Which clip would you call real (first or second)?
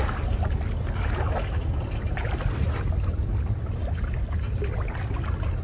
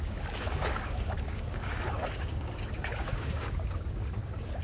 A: first